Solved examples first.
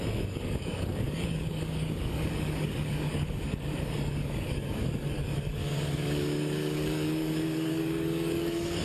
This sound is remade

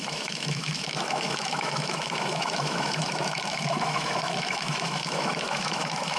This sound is remade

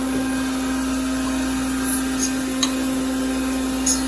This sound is recorded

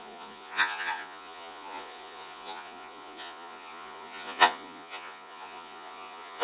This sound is remade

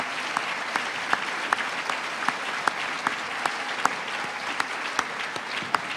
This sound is recorded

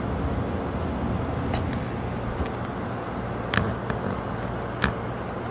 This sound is recorded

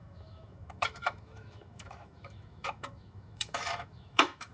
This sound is remade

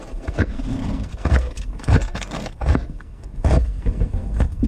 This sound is remade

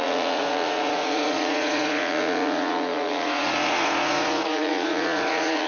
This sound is remade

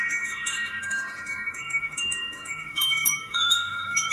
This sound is remade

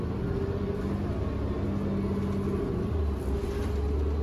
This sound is recorded